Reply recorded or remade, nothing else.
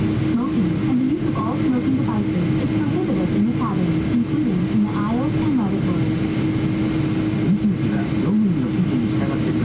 recorded